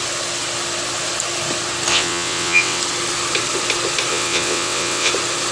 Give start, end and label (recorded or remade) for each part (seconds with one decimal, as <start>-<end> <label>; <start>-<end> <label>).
0.0-1.9 recorded; 1.9-2.8 remade; 2.8-4.1 recorded; 4.1-5.1 remade; 5.1-5.5 recorded